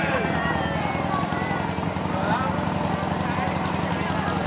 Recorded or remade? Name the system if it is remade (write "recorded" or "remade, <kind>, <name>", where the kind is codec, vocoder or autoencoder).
recorded